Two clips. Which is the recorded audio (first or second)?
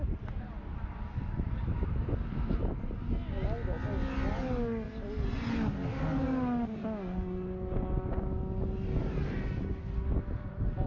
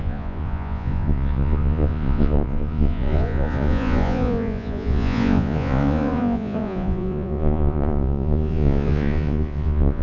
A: first